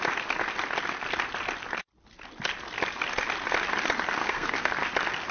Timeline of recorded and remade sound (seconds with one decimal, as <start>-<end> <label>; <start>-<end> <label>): 0.0-4.2 recorded; 4.2-4.7 remade; 4.7-5.3 recorded